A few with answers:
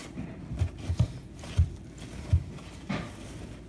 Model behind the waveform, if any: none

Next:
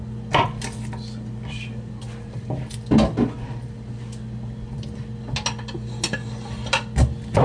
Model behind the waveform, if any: none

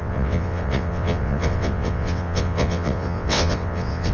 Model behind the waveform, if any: vocoder, WaveNeXt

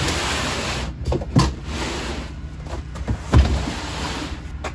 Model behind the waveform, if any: none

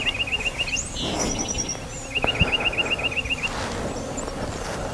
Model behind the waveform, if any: none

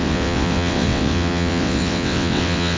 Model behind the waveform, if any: vocoder, WaveNeXt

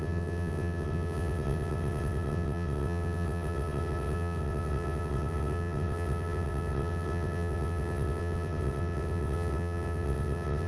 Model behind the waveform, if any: vocoder, WaveNeXt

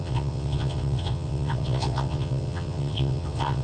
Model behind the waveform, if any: vocoder, WaveNeXt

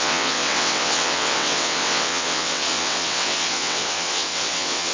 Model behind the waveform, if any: vocoder, WaveNeXt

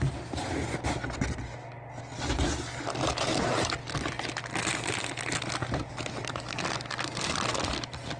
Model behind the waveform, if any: none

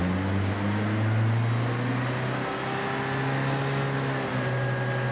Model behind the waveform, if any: none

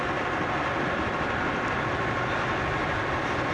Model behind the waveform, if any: none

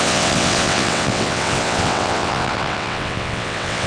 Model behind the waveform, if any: vocoder, WaveNeXt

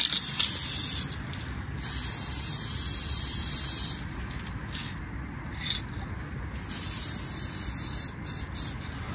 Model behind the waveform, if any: none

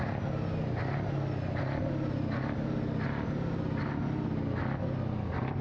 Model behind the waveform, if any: none